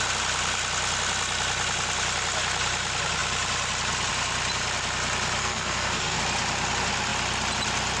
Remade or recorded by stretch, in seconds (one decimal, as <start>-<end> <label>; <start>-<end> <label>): 0.0-5.4 recorded; 5.4-6.2 remade; 6.2-8.0 recorded